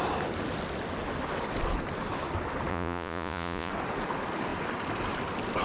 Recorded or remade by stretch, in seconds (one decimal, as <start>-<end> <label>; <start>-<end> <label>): 0.0-2.7 recorded; 2.7-3.7 remade; 3.7-5.6 recorded